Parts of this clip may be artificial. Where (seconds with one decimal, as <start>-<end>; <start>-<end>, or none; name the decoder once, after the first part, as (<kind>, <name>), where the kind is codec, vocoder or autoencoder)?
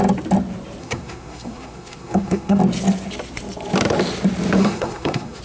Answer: 0.8-2.6 (codec, SNAC); 4.6-5.4